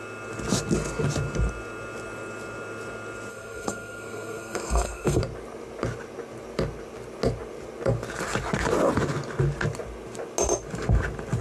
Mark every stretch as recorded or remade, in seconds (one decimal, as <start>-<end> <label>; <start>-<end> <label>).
0.0-3.3 recorded; 3.3-5.2 remade; 5.2-11.4 recorded